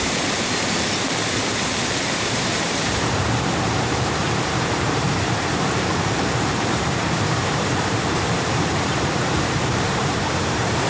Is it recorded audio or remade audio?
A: remade